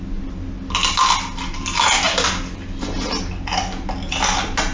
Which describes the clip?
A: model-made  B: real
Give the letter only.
B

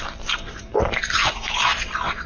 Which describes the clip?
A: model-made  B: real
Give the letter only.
A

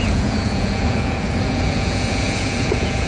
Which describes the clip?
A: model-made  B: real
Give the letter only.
A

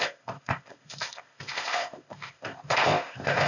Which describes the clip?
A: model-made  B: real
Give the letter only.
A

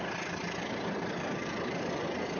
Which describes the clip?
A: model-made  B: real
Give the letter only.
B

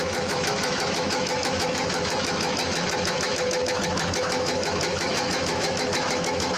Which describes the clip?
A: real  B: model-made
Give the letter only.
B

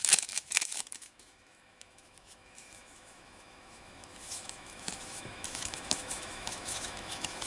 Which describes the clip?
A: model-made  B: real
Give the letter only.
A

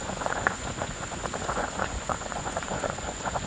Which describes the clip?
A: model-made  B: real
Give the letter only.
A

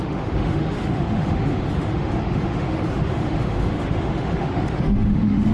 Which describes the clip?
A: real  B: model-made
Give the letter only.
B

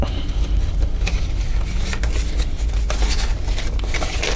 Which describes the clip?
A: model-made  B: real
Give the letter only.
B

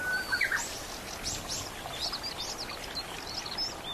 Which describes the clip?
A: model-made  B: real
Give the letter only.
B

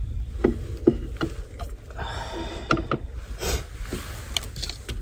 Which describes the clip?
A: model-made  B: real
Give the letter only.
B